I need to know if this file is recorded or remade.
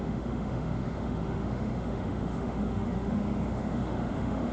remade